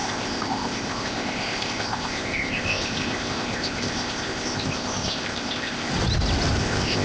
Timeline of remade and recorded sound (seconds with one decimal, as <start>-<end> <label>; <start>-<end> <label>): 0.0-5.9 remade; 5.9-6.6 recorded; 6.6-7.0 remade